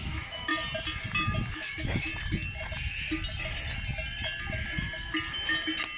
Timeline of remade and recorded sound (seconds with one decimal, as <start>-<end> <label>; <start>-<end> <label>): 0.0-0.5 remade; 0.5-1.5 recorded; 1.5-2.1 remade; 2.1-6.0 recorded